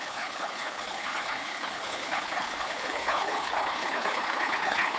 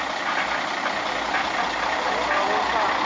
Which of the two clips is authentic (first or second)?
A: second